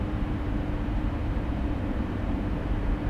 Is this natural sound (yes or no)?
no